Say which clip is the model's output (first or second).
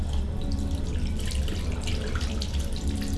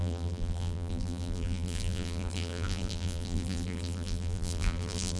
second